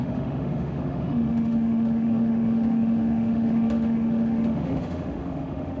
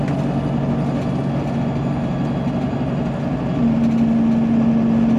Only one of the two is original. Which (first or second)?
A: second